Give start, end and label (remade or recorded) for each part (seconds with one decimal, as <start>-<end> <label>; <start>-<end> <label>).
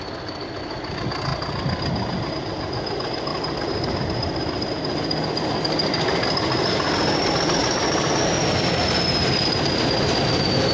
0.0-3.3 recorded; 3.3-4.7 remade; 4.7-10.7 recorded